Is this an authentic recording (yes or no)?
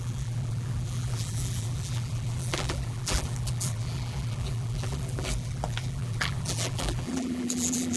no